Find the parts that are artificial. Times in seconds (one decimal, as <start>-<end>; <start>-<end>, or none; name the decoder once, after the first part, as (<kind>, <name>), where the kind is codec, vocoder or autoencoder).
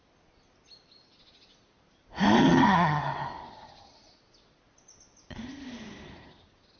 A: 2.4-3.0 (vocoder, HiFi-GAN)